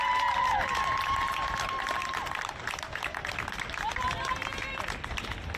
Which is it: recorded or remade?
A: remade